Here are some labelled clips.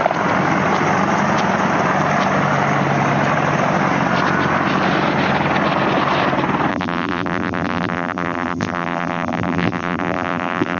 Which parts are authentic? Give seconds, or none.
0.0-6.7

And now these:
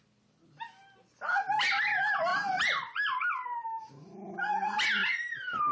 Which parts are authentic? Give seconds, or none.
0.0-2.3; 4.3-5.0